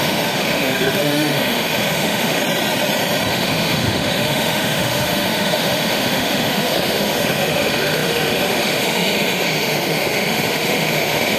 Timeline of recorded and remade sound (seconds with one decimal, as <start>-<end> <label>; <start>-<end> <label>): 0.0-2.4 remade; 2.4-3.3 recorded; 3.3-11.4 remade